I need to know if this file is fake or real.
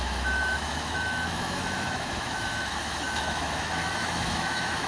fake